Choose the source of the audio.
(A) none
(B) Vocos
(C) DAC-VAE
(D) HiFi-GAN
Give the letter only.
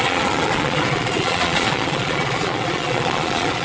B